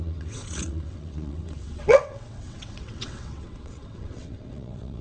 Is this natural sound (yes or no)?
no